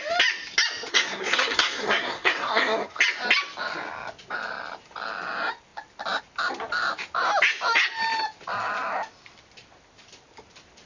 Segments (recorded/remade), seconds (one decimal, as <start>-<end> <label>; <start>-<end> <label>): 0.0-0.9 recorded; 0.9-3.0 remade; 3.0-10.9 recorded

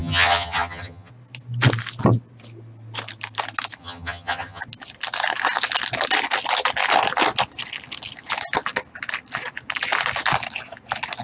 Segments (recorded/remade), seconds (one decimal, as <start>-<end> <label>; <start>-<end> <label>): 0.0-1.1 remade; 1.1-3.8 recorded; 3.8-4.6 remade; 4.6-11.2 recorded

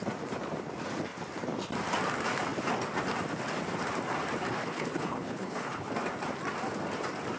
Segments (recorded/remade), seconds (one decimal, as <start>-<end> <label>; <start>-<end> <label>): 0.0-4.5 recorded; 4.5-5.9 remade; 5.9-7.4 recorded